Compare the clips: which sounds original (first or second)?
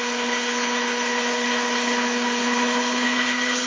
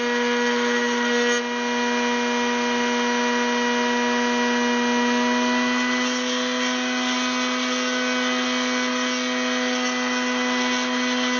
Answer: second